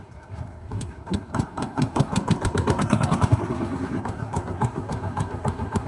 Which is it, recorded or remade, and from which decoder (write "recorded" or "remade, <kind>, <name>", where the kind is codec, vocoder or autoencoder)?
remade, codec, SNAC